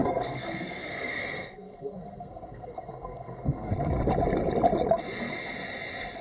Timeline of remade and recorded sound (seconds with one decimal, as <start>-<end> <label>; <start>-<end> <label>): 0.0-3.7 remade; 3.7-6.2 recorded